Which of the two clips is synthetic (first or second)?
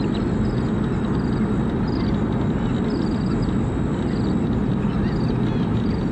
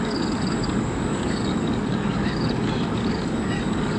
second